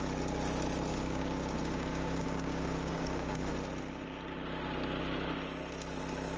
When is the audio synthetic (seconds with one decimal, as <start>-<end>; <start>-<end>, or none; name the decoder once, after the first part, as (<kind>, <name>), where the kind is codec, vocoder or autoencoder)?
0.9-3.5 (codec, DAC)

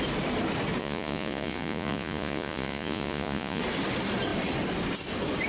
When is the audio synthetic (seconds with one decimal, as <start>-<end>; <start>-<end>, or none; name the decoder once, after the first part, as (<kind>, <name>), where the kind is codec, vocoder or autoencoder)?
0.8-3.6 (vocoder, Vocos)

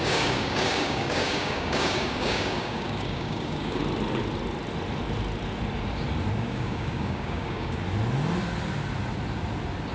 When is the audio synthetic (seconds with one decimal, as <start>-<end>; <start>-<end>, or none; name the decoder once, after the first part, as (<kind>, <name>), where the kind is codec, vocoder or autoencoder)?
0.0-3.8 (codec, DAC); 6.4-7.8

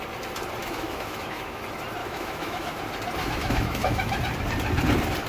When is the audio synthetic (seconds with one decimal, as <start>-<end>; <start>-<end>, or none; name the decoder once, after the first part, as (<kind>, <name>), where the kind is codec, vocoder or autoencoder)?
0.6-1.6 (autoencoder, DAC-VAE); 2.0-2.8; 3.2-4.2